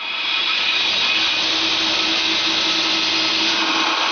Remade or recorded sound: recorded